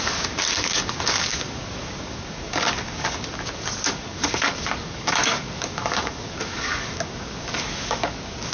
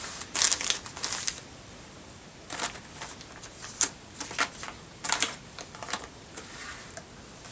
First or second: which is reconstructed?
first